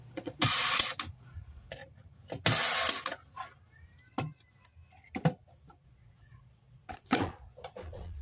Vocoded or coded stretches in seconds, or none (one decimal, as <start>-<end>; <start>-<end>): 0.0-0.5; 1.1-1.8; 5.7-8.2

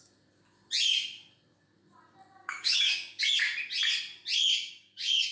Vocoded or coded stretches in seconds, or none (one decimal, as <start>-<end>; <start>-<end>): 2.4-3.2; 4.5-5.3

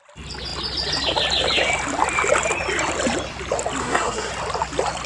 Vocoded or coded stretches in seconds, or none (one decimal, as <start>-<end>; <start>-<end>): 3.8-4.3

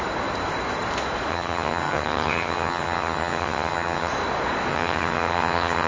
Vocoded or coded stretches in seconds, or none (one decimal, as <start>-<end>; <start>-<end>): 1.3-4.1; 4.7-5.9

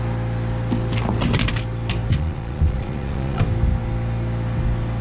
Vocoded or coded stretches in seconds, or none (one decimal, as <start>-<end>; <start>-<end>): 2.1-3.4